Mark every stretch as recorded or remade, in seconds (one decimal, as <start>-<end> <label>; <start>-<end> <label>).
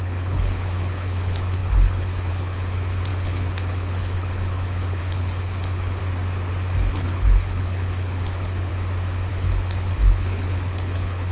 0.0-6.0 remade; 6.0-6.9 recorded; 6.9-8.7 remade; 8.7-9.3 recorded; 9.3-11.3 remade